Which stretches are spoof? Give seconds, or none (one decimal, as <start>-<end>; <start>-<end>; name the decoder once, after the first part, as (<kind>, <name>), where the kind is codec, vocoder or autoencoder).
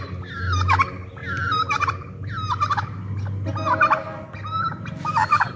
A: none